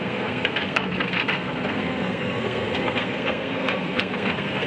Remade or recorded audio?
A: remade